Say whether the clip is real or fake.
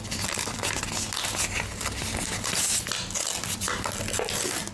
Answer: real